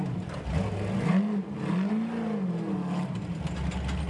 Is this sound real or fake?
real